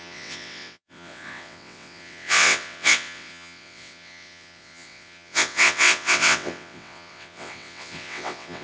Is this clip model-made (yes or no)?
yes